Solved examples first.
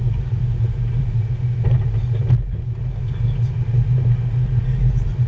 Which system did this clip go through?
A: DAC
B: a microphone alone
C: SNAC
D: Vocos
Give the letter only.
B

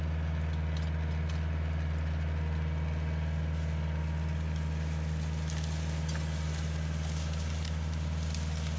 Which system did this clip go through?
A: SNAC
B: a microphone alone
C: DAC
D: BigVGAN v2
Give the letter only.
B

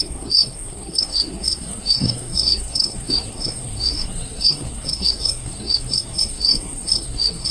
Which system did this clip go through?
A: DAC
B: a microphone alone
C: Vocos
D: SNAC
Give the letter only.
D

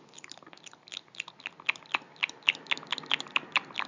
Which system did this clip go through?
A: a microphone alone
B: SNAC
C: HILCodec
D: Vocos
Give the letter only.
A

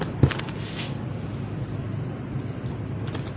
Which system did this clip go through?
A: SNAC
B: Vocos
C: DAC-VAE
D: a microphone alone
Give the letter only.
D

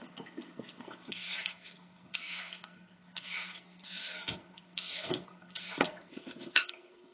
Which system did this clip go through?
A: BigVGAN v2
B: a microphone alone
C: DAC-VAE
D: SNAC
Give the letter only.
D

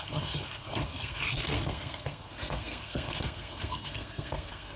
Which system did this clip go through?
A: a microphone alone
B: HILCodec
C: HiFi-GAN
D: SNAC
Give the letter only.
D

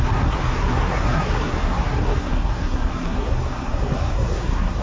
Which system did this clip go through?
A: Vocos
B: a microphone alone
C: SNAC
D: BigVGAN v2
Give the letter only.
C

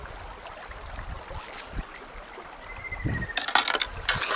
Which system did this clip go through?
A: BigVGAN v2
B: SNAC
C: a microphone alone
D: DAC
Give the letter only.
C